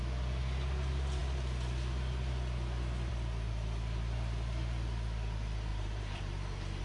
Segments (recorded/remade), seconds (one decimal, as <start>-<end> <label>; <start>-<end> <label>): 0.0-5.7 recorded; 5.7-6.8 remade